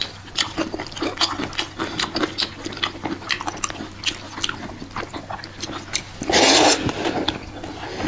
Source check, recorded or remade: recorded